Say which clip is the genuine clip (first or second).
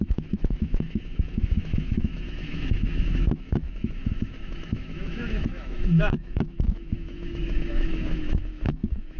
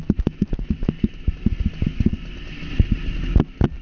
second